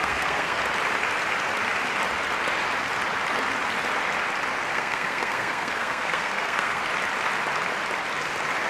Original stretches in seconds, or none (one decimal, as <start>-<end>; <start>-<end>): 0.6-4.7; 6.8-8.7